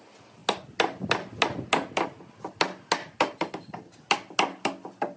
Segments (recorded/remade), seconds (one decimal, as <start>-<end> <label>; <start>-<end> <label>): 0.0-5.2 recorded